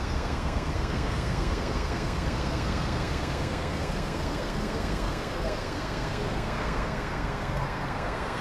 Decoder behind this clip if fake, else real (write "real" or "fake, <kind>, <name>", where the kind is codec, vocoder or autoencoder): fake, codec, SNAC